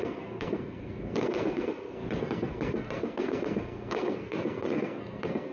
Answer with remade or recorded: remade